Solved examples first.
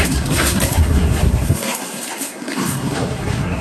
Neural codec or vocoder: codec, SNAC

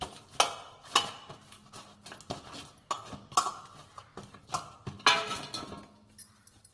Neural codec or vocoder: none